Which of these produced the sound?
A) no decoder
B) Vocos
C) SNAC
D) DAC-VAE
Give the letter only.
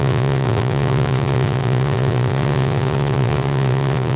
B